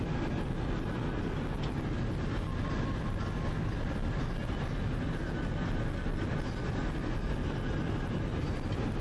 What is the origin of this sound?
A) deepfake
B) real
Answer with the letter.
B